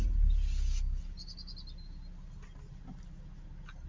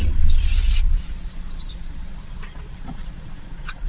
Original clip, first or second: first